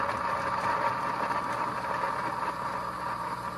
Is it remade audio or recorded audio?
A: recorded